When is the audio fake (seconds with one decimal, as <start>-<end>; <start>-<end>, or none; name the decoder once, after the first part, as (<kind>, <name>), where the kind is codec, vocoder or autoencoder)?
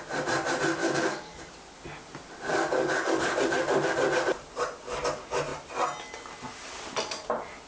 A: 0.8-1.5 (codec, DAC); 2.5-3.4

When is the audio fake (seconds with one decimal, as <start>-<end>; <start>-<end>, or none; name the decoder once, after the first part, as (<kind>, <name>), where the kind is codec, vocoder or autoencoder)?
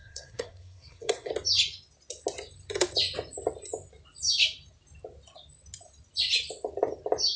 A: 0.0-1.3 (codec, SNAC)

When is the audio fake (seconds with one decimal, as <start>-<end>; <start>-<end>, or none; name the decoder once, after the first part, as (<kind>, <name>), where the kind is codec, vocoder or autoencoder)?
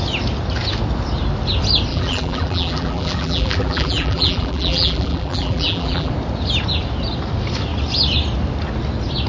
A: 1.9-6.1 (vocoder, BigVGAN v2)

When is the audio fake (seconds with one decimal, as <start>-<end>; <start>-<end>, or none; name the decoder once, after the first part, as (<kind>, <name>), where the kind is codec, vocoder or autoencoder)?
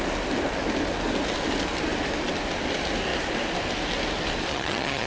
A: 4.5-5.1 (vocoder, HiFi-GAN)